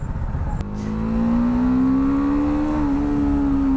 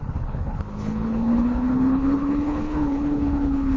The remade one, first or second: second